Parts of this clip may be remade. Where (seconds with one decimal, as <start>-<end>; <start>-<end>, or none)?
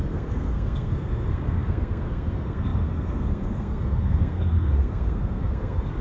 0.0-6.0